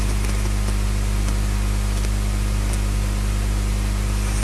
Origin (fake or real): real